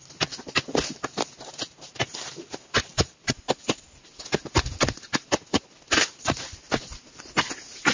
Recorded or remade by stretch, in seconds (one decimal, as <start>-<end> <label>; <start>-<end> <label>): 0.0-7.9 recorded